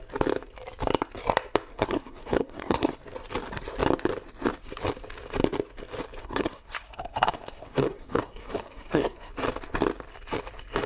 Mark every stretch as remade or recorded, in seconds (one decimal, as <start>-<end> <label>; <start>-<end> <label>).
0.0-1.7 recorded; 1.7-2.9 remade; 2.9-6.2 recorded; 6.2-9.3 remade; 9.3-10.9 recorded